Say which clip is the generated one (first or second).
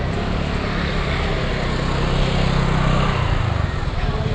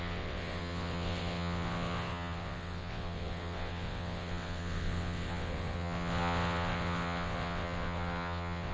second